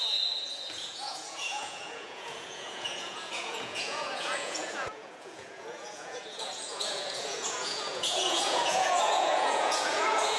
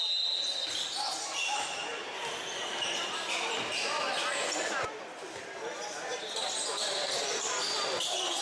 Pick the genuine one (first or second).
second